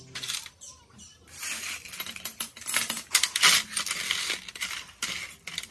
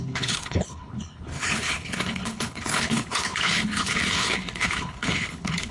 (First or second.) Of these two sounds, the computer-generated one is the second